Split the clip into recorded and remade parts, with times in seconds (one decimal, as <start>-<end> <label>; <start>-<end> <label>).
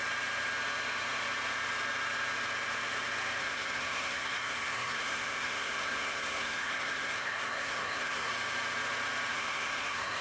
0.0-3.4 recorded; 3.4-8.3 remade; 8.3-9.3 recorded; 9.3-10.2 remade